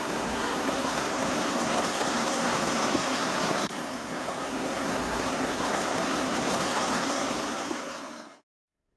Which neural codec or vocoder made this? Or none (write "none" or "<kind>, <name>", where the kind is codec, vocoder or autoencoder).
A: codec, SNAC